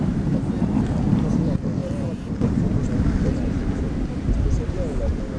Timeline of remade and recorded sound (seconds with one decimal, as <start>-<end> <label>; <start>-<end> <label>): 0.0-5.4 recorded